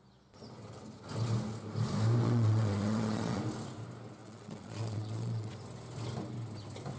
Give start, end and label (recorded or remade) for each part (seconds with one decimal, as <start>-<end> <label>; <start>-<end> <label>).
0.0-2.2 recorded; 2.2-3.4 remade; 3.4-4.2 recorded; 4.2-5.5 remade; 5.5-7.0 recorded